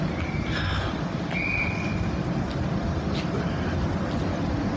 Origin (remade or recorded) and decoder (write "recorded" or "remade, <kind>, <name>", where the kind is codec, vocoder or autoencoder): recorded